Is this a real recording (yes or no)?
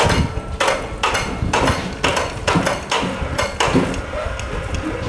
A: yes